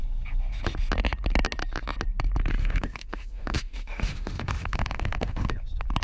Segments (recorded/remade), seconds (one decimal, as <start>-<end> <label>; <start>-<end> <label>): 0.0-2.6 recorded; 2.6-5.5 remade; 5.5-6.0 recorded